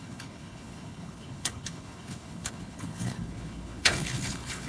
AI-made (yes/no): yes